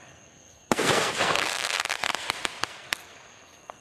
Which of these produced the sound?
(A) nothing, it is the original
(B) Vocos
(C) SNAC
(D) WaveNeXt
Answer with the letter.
C